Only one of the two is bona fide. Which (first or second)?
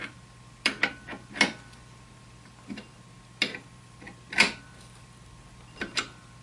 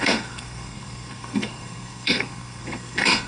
first